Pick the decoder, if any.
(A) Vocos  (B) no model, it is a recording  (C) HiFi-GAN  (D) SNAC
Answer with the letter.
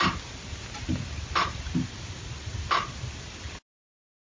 B